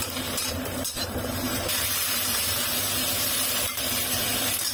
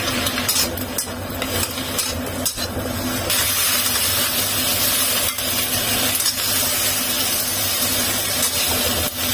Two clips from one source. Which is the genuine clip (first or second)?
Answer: second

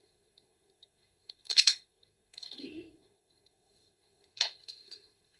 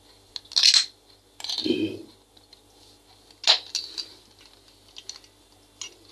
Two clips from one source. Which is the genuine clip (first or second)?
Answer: second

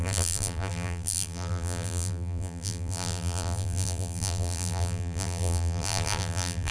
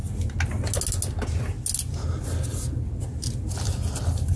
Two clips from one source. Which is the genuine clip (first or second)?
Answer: second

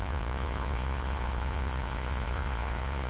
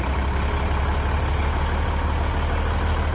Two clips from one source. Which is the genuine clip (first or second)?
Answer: second